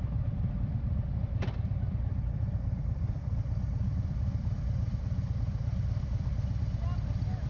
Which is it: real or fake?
fake